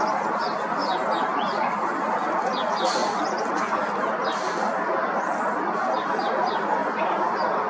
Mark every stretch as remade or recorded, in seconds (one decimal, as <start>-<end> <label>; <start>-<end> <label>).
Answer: 0.0-7.7 recorded